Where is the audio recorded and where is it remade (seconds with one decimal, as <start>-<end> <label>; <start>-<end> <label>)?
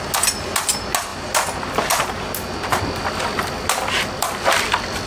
0.0-5.1 recorded